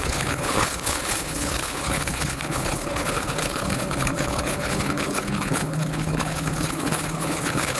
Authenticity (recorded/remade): remade